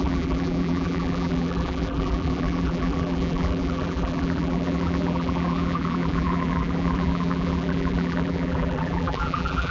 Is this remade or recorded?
remade